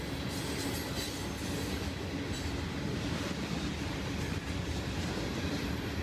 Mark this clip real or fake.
real